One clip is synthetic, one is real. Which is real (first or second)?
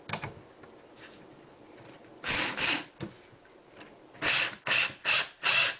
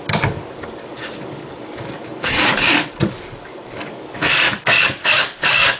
first